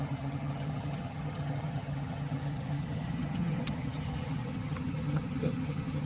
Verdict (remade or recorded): remade